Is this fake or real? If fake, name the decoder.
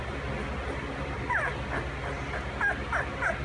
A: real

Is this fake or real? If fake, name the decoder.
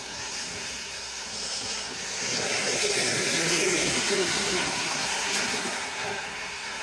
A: fake, codec, SNAC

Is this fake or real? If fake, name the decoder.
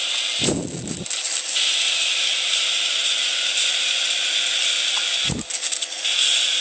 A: real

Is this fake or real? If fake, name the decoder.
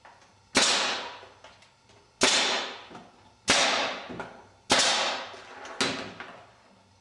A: real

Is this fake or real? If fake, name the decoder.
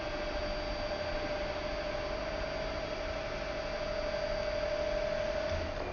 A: real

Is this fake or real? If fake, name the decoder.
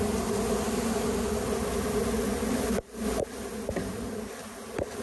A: real